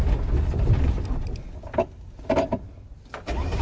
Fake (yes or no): no